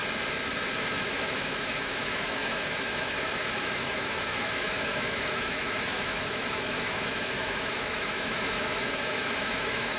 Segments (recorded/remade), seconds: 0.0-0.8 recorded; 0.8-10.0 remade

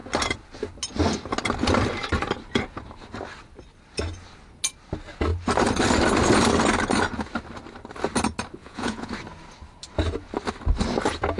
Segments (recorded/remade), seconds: 0.0-8.6 recorded; 8.6-9.1 remade; 9.1-11.4 recorded

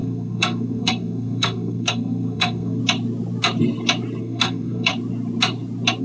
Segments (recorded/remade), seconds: 0.0-2.8 remade; 2.8-4.2 recorded; 4.2-4.9 remade; 4.9-6.0 recorded

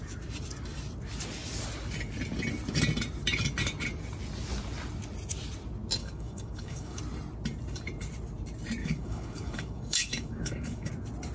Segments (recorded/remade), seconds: 0.0-6.0 recorded; 6.0-7.0 remade; 7.0-8.8 recorded; 8.8-10.9 remade; 10.9-11.3 recorded

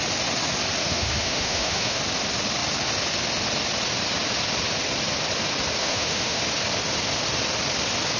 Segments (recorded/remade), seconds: 0.0-0.8 recorded; 0.8-2.0 remade; 2.0-5.8 recorded; 5.8-6.4 remade; 6.4-8.2 recorded

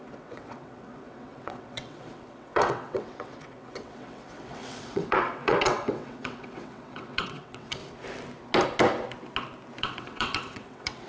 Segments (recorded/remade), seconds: 0.0-7.8 remade; 7.8-9.8 recorded; 9.8-11.1 remade